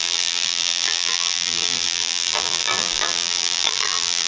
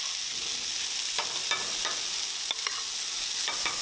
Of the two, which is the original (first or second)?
second